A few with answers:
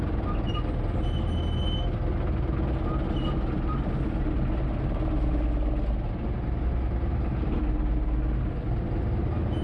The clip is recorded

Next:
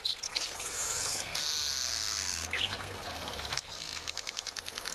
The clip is remade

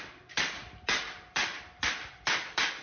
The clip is remade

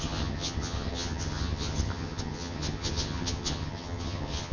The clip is remade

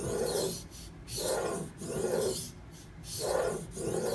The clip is recorded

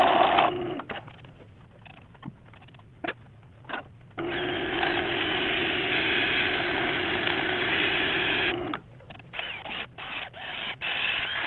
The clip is recorded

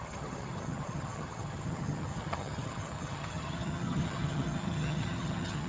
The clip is remade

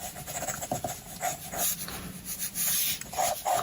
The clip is recorded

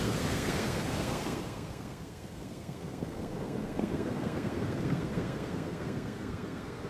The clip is remade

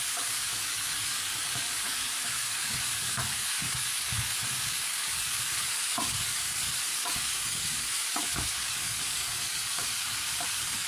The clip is remade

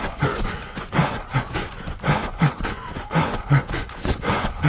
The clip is remade